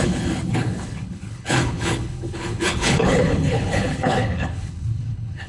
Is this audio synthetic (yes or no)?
yes